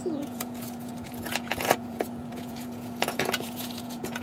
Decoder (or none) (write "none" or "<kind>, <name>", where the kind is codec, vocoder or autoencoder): vocoder, Vocos